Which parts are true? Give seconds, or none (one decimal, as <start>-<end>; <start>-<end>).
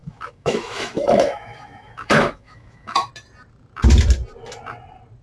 3.1-5.2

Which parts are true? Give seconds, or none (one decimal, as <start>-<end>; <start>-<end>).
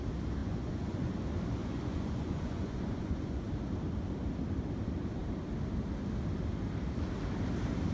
0.0-0.4; 1.1-1.6; 3.5-7.9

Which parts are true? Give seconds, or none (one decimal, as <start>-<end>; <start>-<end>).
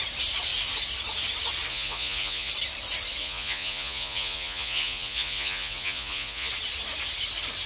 0.0-1.7; 2.5-3.2; 6.5-7.7